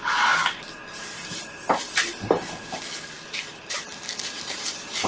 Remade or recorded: recorded